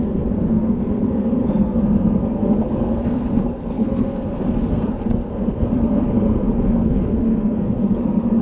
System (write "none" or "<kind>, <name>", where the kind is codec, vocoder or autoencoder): codec, SNAC